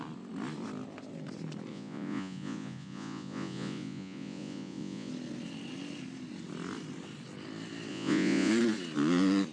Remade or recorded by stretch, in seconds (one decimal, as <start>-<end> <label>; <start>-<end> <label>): 0.0-1.7 recorded; 1.7-5.1 remade; 5.1-7.9 recorded; 7.9-8.5 remade; 8.5-9.5 recorded